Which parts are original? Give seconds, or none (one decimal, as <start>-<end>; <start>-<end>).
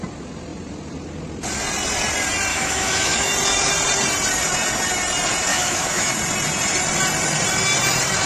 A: 0.0-2.5; 3.3-5.5; 6.1-8.3